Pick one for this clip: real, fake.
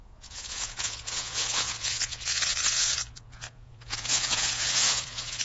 fake